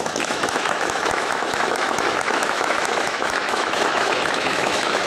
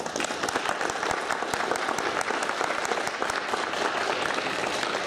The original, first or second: second